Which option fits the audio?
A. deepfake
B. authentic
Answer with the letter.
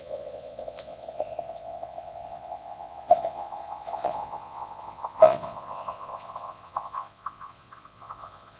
A